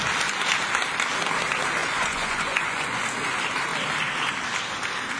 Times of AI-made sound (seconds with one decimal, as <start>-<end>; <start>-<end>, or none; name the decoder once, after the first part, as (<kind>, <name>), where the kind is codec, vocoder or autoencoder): 1.8-3.0 (vocoder, Vocos)